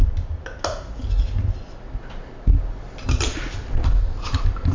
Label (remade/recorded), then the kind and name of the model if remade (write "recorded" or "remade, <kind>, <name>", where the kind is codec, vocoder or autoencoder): recorded